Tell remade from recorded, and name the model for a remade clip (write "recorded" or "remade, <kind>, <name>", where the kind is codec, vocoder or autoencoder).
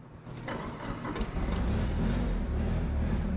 recorded